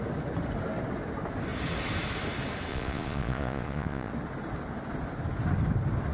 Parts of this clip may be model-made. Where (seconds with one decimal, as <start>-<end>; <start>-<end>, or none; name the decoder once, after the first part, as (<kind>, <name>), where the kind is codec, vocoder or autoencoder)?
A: 2.7-4.1 (vocoder, Vocos)